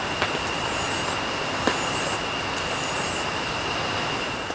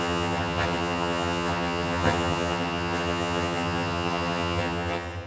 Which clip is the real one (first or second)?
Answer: first